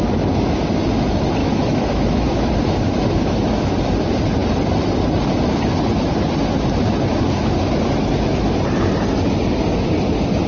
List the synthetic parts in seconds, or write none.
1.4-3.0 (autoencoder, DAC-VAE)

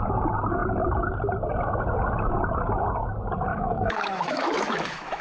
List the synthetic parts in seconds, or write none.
3.5-5.2 (autoencoder, DAC-VAE)

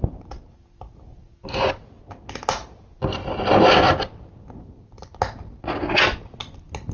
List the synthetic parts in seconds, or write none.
none